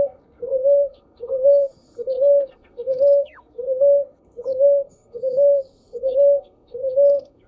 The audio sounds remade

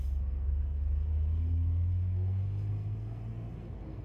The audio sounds remade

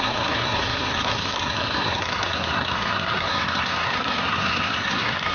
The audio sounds remade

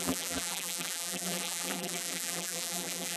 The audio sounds remade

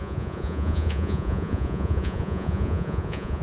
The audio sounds remade